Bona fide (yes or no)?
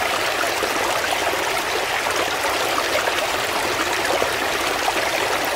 yes